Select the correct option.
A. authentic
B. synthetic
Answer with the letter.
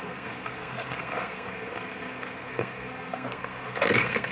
B